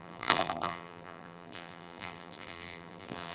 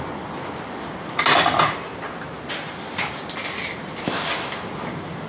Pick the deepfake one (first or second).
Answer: first